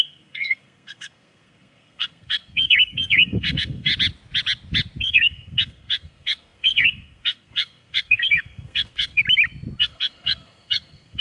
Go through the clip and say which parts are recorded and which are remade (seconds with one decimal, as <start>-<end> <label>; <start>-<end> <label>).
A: 0.0-3.9 remade; 3.9-5.0 recorded; 5.0-9.2 remade; 9.2-9.8 recorded; 9.8-11.2 remade